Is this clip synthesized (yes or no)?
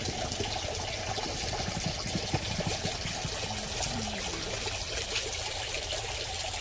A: no